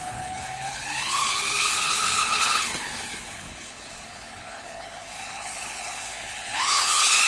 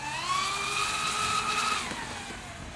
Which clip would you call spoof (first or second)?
first